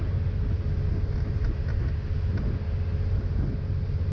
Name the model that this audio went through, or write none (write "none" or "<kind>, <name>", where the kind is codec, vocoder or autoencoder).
none